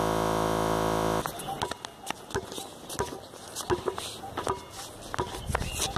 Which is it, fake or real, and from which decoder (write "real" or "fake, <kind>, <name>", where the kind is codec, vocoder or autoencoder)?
real